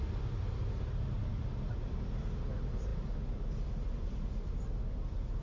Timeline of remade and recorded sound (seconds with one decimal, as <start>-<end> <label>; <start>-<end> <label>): 0.0-5.4 recorded